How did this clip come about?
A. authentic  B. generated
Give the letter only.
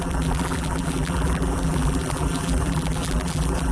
B